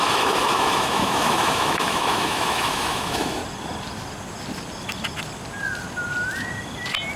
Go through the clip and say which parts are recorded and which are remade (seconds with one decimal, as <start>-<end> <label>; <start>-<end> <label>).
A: 0.0-3.4 remade; 3.4-7.2 recorded